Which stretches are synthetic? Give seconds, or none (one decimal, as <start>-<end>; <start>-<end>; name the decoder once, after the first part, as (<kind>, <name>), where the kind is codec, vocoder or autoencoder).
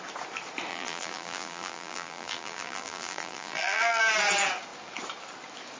0.7-4.0 (vocoder, BigVGAN v2)